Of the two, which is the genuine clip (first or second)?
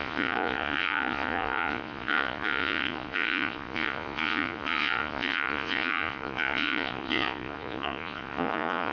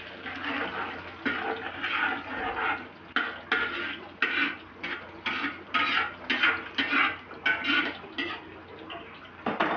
second